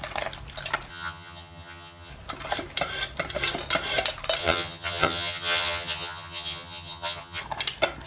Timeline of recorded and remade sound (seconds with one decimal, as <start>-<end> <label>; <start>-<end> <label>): 0.0-0.9 recorded; 0.9-2.1 remade; 2.1-4.4 recorded; 4.4-7.4 remade; 7.4-8.1 recorded